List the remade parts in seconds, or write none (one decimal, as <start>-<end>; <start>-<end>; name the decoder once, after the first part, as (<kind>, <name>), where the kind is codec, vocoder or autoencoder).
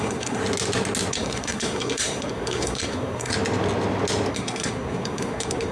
0.0-0.4 (codec, SNAC); 1.1-3.3; 4.3-5.7